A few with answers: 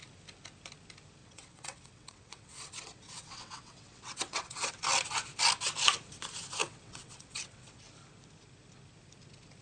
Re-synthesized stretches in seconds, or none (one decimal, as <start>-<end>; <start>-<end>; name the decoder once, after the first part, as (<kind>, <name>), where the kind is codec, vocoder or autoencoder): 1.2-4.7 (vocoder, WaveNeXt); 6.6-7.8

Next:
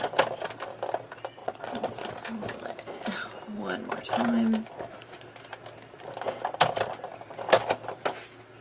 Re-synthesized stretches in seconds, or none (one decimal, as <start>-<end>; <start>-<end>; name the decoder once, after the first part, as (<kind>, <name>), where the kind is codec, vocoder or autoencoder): 1.4-2.0 (vocoder, WaveNeXt)

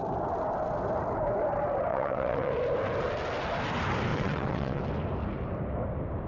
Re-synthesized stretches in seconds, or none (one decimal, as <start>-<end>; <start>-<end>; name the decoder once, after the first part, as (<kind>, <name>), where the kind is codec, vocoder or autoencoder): 1.9-2.5 (vocoder, WaveNeXt); 4.1-4.8

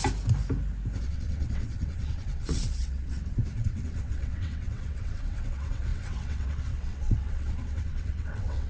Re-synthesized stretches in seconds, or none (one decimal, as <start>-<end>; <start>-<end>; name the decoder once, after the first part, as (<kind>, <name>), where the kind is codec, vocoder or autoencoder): 1.0-8.7 (vocoder, WaveNeXt)